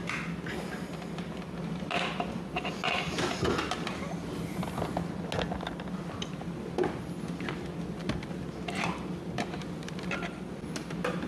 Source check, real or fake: real